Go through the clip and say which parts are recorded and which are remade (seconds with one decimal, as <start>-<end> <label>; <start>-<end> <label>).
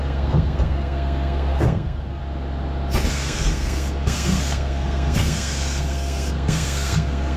0.0-2.2 remade; 2.2-3.1 recorded; 3.1-7.4 remade